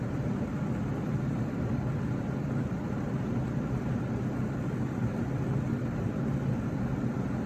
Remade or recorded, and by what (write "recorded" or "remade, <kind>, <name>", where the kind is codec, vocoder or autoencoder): remade, vocoder, BigVGAN v2